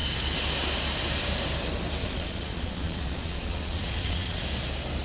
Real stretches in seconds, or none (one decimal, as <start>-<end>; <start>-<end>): 0.0-2.0; 4.4-5.0